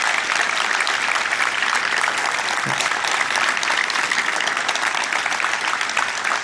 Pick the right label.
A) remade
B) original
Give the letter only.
B